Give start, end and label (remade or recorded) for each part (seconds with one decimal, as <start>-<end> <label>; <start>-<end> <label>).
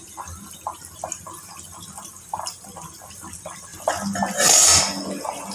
0.0-5.5 recorded